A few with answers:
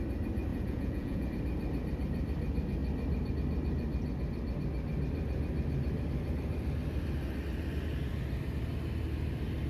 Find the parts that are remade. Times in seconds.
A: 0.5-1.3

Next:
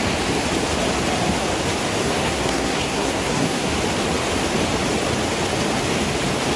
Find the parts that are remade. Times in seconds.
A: 2.0-3.7

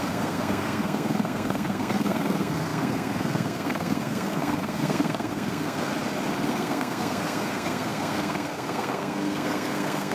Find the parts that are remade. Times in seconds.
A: 0.0-5.9; 6.5-10.1

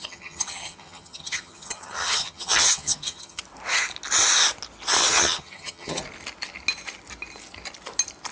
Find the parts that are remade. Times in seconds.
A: 0.0-3.4; 5.0-6.0

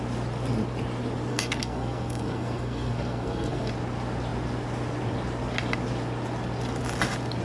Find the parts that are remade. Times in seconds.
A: 1.3-3.7

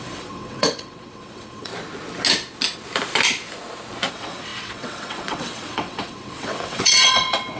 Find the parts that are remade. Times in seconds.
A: 0.0-1.7; 4.1-7.6

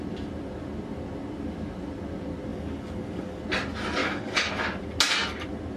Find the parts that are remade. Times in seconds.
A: 2.5-3.4; 4.0-4.5